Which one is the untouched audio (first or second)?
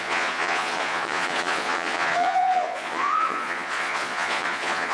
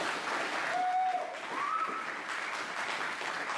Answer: second